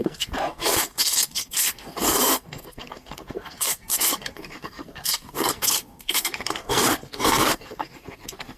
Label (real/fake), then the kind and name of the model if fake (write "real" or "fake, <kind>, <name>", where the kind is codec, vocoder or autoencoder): fake, codec, SNAC